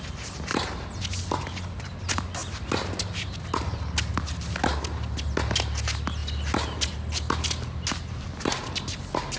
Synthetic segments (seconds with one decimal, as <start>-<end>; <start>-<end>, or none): none